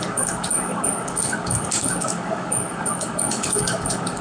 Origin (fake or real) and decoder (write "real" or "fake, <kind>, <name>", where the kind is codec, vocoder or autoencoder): fake, codec, DAC